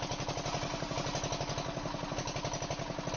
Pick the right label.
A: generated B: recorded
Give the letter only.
B